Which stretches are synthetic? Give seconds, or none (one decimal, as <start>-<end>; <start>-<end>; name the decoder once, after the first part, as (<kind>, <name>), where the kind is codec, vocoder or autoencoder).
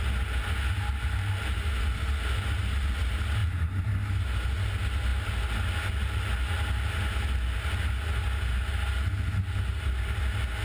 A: 3.4-3.9 (vocoder, BigVGAN v2)